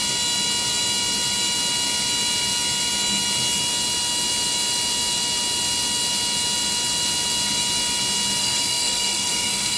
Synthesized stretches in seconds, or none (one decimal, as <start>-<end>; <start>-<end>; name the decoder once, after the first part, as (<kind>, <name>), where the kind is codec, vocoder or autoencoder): 8.4-9.8 (codec, SNAC)